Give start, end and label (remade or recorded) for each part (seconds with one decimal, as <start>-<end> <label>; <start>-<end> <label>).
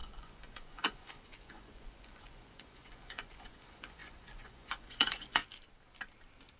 0.0-5.4 remade; 5.4-6.6 recorded